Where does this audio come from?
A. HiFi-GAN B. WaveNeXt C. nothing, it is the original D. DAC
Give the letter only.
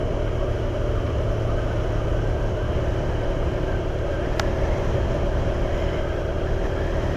C